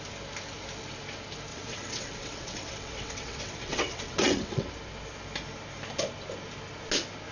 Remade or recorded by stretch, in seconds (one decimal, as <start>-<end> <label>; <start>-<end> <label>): 0.0-1.5 recorded; 1.5-4.7 remade; 4.7-7.3 recorded